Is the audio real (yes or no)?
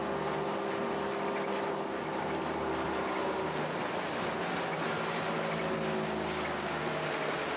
yes